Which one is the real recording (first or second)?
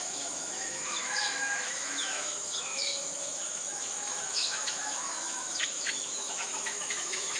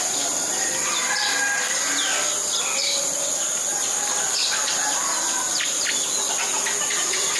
second